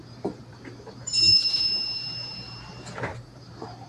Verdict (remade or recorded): remade